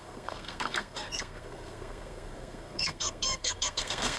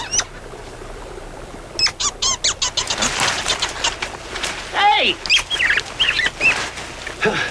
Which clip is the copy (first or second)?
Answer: first